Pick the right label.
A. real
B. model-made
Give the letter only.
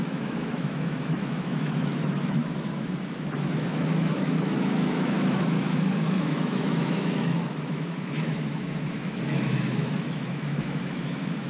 B